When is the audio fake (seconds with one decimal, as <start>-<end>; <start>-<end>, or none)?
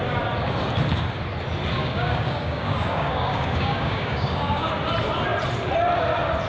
1.8-4.7